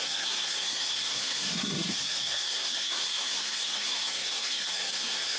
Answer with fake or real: fake